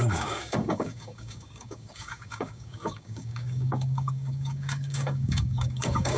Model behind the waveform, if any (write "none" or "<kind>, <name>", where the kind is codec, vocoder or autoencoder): codec, DAC